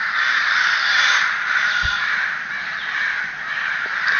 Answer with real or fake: fake